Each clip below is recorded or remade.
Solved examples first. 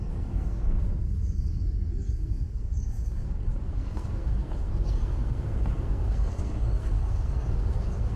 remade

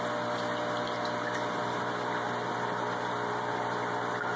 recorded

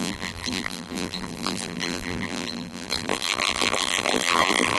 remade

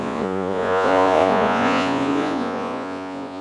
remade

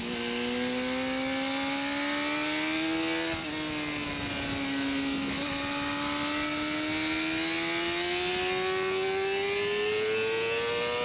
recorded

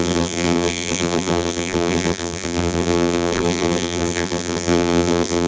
remade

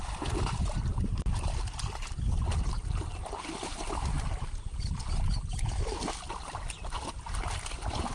recorded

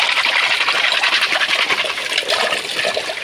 remade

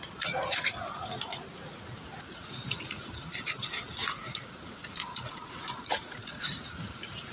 remade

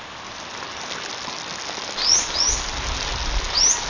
recorded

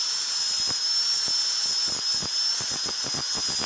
recorded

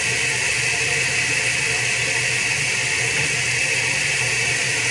recorded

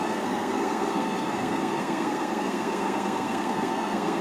remade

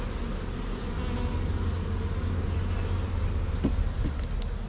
recorded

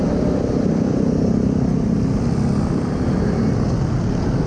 recorded